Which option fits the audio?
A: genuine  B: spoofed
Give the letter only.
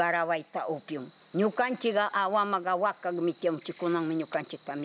A